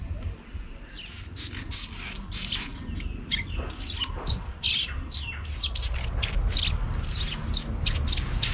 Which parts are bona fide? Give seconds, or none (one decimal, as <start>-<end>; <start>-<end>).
0.0-8.5